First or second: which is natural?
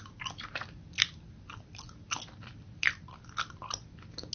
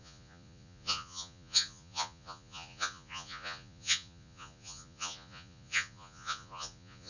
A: first